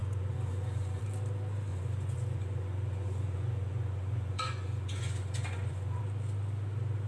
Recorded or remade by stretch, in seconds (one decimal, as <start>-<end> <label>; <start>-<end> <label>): 0.0-1.0 remade; 1.0-1.7 recorded; 1.7-6.0 remade; 6.0-7.1 recorded